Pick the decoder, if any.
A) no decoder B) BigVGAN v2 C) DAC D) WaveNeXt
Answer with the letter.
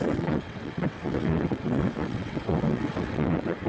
D